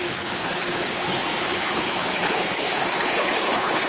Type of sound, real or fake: fake